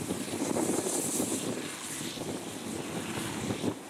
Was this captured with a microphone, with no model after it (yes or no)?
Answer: yes